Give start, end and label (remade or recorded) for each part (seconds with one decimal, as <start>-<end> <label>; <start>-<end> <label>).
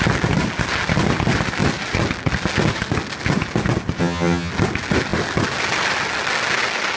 0.0-4.0 recorded; 4.0-4.5 remade; 4.5-7.0 recorded